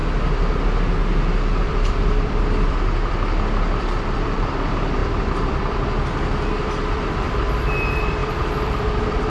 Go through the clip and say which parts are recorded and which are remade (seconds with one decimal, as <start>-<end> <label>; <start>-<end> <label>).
0.0-1.6 recorded; 1.6-9.3 remade